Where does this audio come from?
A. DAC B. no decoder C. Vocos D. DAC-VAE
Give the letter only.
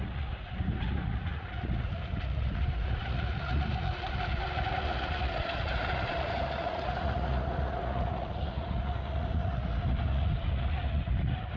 C